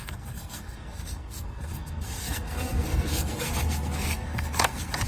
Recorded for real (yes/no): no